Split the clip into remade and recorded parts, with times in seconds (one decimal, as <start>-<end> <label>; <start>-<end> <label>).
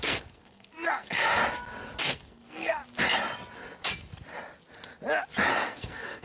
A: 0.0-1.3 remade; 1.3-2.0 recorded; 2.0-2.8 remade; 2.8-5.5 recorded; 5.5-6.2 remade